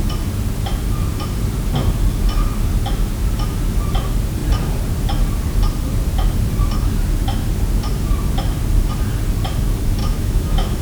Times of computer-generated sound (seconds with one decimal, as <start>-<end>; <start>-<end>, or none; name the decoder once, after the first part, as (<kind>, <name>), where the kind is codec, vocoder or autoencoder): 10.0-10.8 (autoencoder, DAC-VAE)